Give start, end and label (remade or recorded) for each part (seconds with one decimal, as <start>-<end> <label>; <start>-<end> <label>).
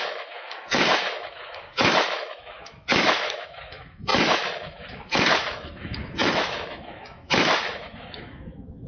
0.0-8.9 remade